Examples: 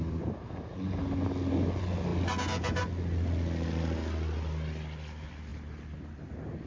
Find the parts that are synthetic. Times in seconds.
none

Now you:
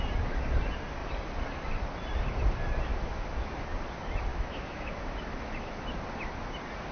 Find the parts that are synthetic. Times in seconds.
2.9-3.6 (autoencoder, DAC-VAE); 4.3-5.8

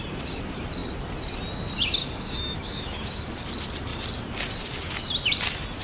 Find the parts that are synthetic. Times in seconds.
2.0-3.4 (autoencoder, DAC-VAE)